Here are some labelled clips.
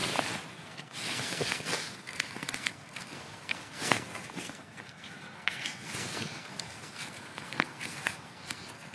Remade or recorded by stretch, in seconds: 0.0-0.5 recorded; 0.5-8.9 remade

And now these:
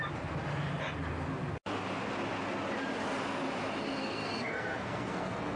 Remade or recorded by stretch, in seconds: 0.0-4.0 recorded; 4.0-5.6 remade

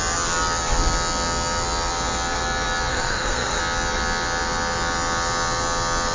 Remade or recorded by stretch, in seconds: 0.0-2.9 recorded; 2.9-3.6 remade; 3.6-6.1 recorded